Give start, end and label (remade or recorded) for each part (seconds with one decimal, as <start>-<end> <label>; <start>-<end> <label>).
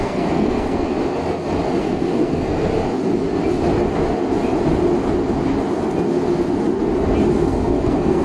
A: 0.0-0.9 remade; 0.9-1.8 recorded; 1.8-2.7 remade; 2.7-7.3 recorded; 7.3-8.2 remade